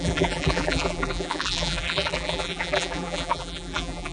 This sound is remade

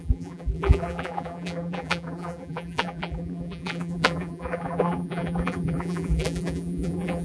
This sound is remade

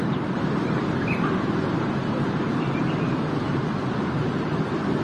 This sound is remade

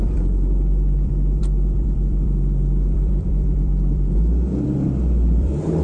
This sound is remade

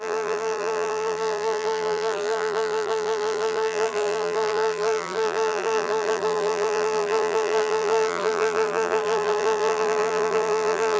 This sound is remade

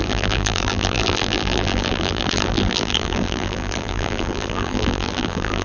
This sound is remade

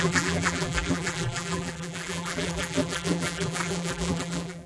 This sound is remade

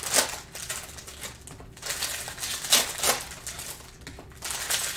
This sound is recorded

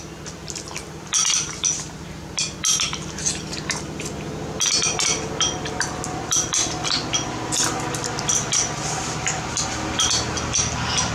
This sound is recorded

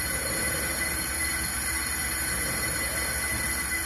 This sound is remade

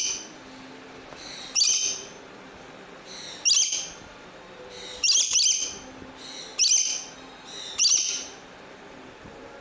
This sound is recorded